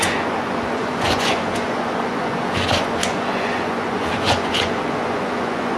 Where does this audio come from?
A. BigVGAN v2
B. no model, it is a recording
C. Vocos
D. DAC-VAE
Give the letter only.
C